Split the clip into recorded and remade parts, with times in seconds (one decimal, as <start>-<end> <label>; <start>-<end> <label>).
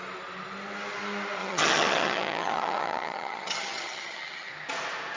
0.0-1.4 recorded; 1.4-4.5 remade; 4.5-5.2 recorded